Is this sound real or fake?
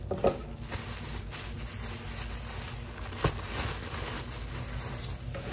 real